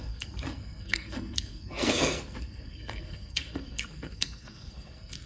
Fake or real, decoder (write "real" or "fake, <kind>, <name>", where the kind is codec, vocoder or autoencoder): fake, codec, SNAC